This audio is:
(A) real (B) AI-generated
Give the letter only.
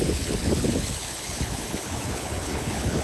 B